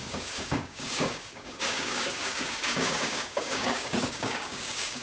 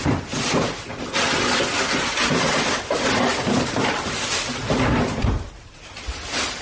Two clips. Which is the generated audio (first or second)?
first